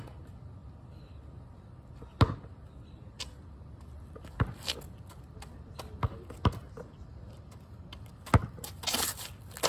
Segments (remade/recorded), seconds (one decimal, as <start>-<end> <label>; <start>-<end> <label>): 0.0-9.7 recorded